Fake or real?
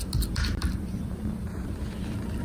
real